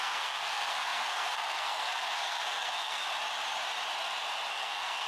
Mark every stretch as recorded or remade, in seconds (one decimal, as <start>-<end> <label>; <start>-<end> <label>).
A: 0.0-3.0 remade; 3.0-4.5 recorded; 4.5-5.1 remade